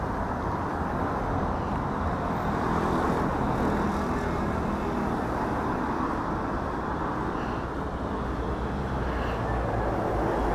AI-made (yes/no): no